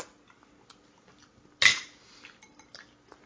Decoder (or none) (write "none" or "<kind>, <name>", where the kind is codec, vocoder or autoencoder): none